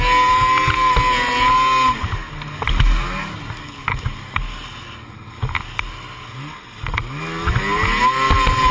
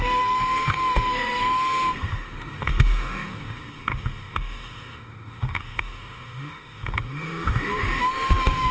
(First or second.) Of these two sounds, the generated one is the second